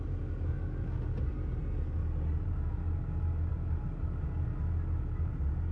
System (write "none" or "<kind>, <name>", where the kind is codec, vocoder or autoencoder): none